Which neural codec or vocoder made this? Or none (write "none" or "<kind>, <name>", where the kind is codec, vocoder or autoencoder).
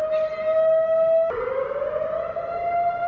none